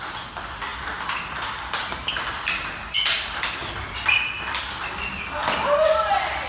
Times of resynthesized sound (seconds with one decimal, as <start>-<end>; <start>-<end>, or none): none